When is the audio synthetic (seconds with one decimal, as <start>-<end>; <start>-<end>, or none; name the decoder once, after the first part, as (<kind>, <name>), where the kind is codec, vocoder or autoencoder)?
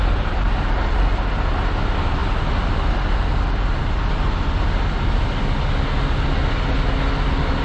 none